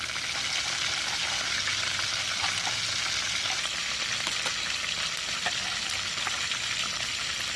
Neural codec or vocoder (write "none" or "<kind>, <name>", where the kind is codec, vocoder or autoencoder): none